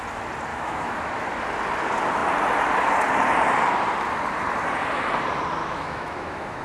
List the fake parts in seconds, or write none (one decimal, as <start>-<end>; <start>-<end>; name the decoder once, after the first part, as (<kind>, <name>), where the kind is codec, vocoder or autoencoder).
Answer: 0.5-1.1 (autoencoder, DAC-VAE); 5.6-6.6